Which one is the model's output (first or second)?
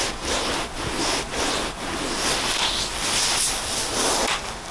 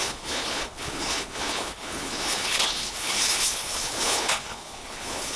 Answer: second